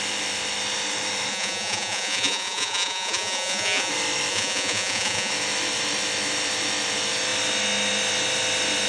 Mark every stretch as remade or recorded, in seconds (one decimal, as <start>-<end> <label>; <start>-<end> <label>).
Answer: 0.0-1.3 recorded; 1.3-3.9 remade; 3.9-4.3 recorded; 4.3-5.3 remade; 5.3-8.9 recorded